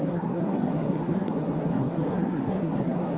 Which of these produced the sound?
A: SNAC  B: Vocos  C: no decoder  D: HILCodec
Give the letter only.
A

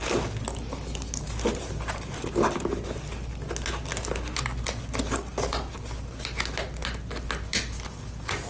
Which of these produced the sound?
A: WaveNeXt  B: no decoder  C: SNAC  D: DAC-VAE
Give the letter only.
B